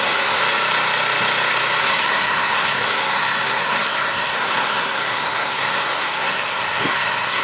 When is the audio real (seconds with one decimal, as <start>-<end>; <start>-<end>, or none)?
0.4-1.8